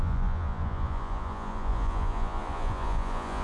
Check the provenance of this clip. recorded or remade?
remade